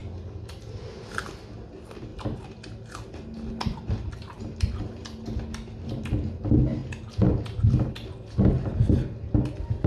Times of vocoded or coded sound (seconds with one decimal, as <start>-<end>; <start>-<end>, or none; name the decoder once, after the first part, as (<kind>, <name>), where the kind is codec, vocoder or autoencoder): none